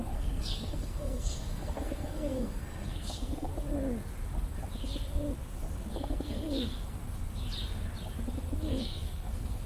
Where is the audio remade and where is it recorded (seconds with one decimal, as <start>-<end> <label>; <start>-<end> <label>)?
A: 0.0-3.5 remade; 3.5-5.9 recorded; 5.9-7.0 remade; 7.0-8.6 recorded; 8.6-9.7 remade